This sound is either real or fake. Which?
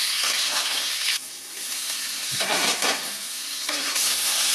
fake